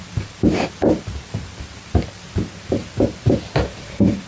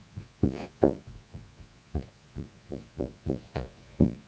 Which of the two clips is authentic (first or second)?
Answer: first